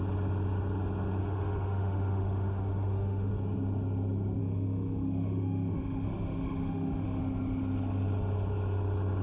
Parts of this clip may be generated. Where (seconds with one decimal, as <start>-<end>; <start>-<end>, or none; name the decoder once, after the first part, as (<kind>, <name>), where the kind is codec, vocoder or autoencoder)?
1.2-3.3 (autoencoder, DAC-VAE); 4.4-7.2

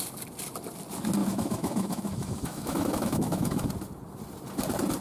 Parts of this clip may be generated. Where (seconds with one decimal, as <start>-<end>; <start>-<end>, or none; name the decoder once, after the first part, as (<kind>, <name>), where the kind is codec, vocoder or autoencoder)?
1.2-3.7 (autoencoder, DAC-VAE)

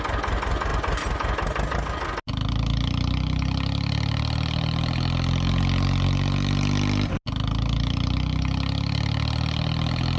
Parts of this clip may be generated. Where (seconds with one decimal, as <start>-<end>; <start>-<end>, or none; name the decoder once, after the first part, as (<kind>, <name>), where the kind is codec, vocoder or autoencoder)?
none

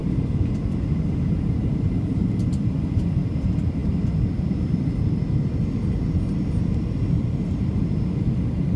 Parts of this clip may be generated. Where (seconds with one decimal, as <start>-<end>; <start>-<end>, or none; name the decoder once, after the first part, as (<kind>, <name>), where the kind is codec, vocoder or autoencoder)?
none

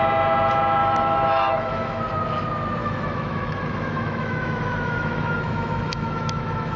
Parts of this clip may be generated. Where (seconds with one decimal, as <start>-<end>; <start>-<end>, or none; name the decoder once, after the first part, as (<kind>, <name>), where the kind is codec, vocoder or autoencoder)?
0.8-2.0 (autoencoder, DAC-VAE); 2.8-6.8